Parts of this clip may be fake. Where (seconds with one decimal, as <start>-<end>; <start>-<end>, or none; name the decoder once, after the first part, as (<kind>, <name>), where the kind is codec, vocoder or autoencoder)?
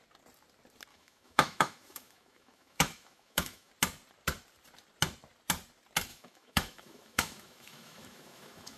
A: 0.9-3.7 (autoencoder, DAC-VAE); 6.1-8.8